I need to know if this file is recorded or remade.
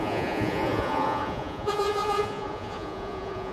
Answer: remade